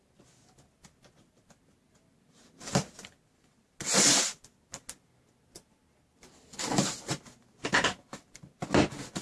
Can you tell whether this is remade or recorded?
recorded